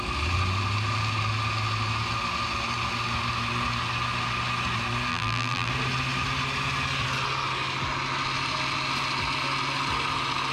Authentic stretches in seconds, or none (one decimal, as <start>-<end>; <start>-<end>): 0.0-5.1; 5.7-10.5